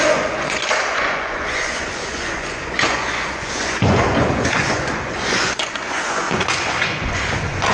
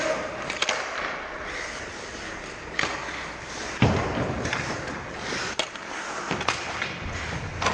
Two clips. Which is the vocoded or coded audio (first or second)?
first